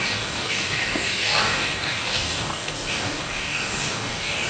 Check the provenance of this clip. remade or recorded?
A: remade